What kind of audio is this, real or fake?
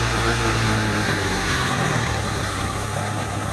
fake